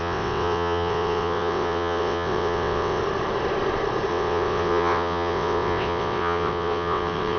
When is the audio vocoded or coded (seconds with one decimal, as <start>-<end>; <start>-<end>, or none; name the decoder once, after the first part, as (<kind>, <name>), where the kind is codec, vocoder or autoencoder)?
0.0-3.0 (vocoder, WaveNeXt); 4.1-7.4